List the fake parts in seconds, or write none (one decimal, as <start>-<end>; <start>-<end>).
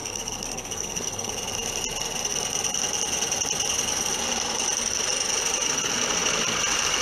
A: 0.0-1.3